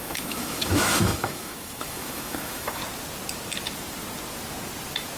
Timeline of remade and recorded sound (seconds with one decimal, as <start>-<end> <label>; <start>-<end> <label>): 0.0-2.8 remade; 2.8-5.2 recorded